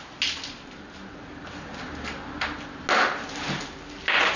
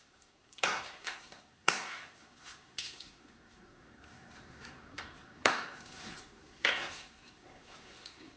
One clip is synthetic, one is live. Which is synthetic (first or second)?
second